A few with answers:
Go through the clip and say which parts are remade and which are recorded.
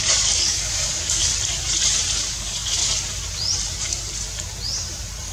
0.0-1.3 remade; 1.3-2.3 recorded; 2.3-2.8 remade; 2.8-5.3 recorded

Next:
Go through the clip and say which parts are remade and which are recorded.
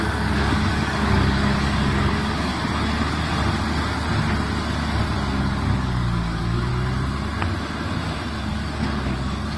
0.0-2.5 remade; 2.5-5.4 recorded; 5.4-6.7 remade; 6.7-8.5 recorded; 8.5-9.6 remade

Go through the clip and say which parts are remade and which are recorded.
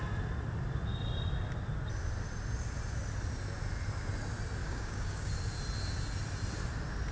0.0-4.6 recorded; 4.6-5.3 remade; 5.3-7.1 recorded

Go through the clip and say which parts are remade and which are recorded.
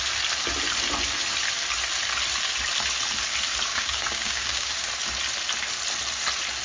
0.0-3.7 recorded; 3.7-4.9 remade; 4.9-6.6 recorded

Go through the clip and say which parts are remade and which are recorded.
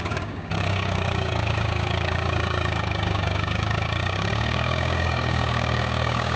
0.0-6.4 remade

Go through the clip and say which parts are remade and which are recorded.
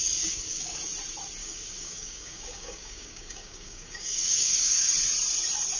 0.0-0.8 remade; 0.8-1.4 recorded; 1.4-4.9 remade; 4.9-5.8 recorded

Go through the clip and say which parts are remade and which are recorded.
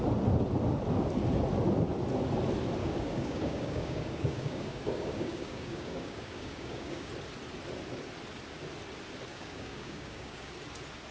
0.0-2.8 recorded; 2.8-7.1 remade; 7.1-9.3 recorded; 9.3-10.5 remade; 10.5-11.1 recorded